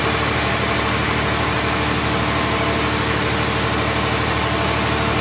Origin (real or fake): real